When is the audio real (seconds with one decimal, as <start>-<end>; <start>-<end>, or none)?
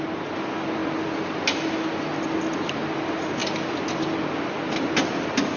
0.0-5.6